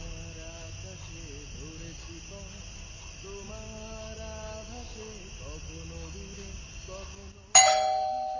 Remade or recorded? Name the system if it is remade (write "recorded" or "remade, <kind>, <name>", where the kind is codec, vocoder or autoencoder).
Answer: recorded